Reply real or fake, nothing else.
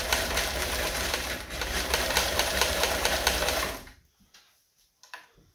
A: fake